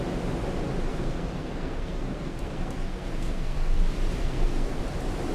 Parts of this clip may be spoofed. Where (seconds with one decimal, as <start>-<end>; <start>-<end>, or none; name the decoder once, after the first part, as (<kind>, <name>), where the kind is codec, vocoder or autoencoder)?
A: 0.9-3.8 (codec, SNAC); 4.2-4.8